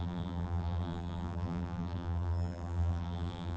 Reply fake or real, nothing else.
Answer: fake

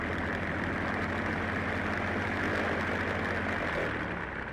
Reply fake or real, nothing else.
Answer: real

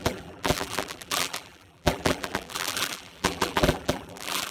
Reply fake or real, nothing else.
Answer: fake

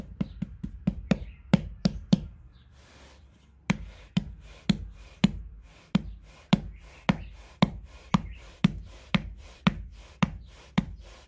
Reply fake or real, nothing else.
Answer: fake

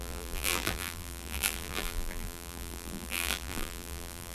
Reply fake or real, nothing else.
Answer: fake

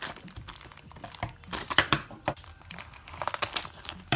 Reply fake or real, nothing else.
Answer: fake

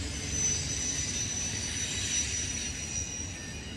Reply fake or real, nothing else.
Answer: real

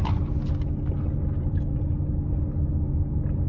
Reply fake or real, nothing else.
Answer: real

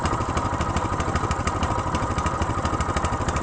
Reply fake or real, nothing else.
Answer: fake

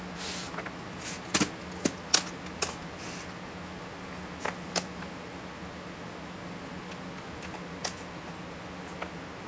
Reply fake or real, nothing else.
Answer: real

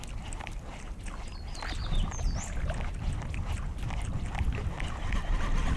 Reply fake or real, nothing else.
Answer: real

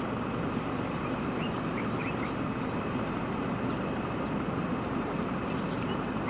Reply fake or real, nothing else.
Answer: real